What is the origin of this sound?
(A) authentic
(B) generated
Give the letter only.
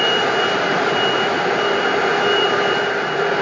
B